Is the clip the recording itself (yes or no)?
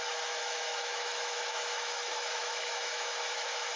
no